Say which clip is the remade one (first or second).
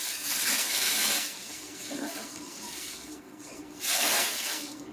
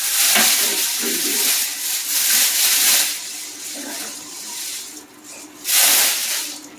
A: first